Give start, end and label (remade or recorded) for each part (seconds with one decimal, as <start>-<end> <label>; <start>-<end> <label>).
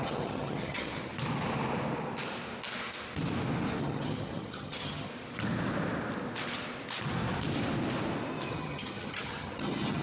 0.0-1.1 remade; 1.1-3.8 recorded; 3.8-5.1 remade; 5.1-8.5 recorded; 8.5-10.0 remade